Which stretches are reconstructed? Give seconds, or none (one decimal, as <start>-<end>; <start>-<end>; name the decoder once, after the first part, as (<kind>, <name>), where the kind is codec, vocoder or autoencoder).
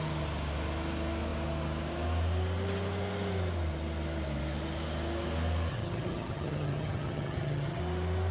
5.7-7.8 (vocoder, HiFi-GAN)